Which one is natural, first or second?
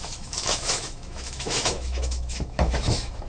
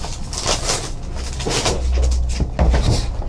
second